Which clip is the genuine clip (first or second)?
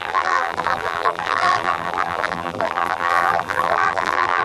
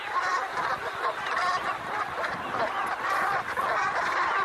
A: second